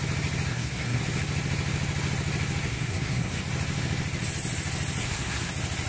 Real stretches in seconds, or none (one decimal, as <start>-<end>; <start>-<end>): 0.0-0.5; 1.0-2.7; 3.4-5.0; 5.5-5.9

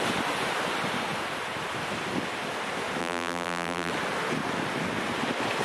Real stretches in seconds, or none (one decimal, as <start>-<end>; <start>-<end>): 0.0-3.0; 3.9-5.6